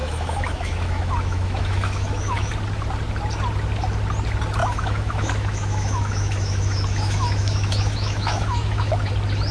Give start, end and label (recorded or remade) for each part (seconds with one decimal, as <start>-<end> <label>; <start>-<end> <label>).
0.0-2.5 remade; 2.5-4.6 recorded; 4.6-9.1 remade; 9.1-9.5 recorded